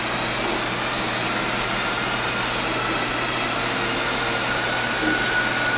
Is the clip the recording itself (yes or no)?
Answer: yes